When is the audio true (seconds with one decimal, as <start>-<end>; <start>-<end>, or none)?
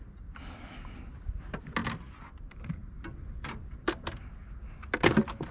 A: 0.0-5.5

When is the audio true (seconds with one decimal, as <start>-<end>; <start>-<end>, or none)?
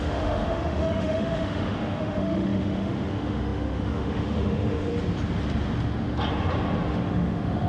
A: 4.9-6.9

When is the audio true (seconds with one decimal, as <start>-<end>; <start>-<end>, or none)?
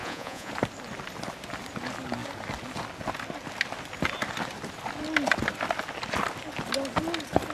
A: 0.5-7.5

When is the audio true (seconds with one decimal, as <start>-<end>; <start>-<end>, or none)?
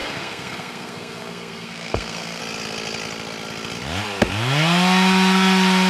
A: 2.4-5.9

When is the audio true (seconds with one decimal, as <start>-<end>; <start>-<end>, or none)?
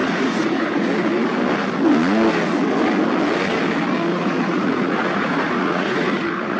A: 0.9-4.1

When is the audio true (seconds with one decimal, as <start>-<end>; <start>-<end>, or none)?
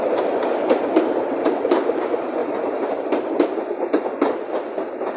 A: 2.4-4.8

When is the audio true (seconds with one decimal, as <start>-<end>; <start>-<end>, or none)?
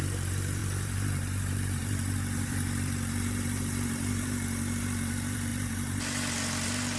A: none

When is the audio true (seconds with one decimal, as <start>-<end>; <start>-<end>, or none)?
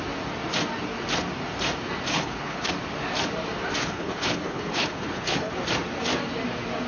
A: 0.0-2.1; 2.7-3.8; 5.6-6.9